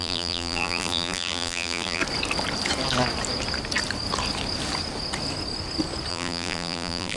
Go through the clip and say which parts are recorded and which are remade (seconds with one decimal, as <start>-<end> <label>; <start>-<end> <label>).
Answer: 0.0-2.0 remade; 2.0-6.1 recorded; 6.1-7.2 remade